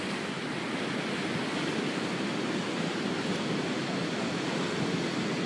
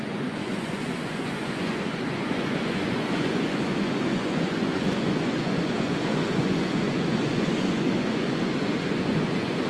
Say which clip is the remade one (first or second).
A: second